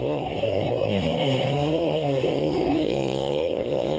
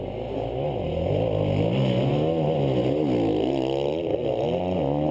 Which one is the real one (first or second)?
second